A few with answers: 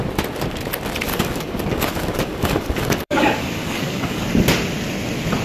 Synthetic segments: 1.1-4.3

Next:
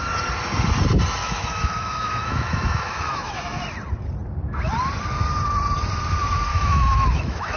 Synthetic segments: 1.2-3.6; 6.5-7.6

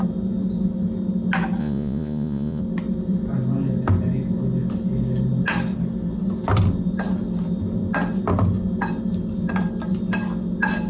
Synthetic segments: 1.6-2.6

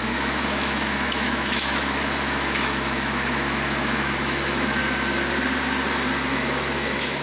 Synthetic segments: 0.0-4.8; 6.3-7.2